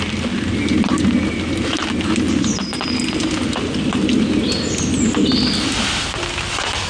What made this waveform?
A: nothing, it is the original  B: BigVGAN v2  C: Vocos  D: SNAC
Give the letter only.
A